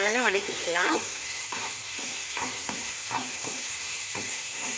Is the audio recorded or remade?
remade